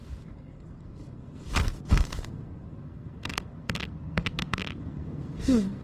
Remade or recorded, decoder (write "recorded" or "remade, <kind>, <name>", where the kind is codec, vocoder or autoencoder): remade, codec, SNAC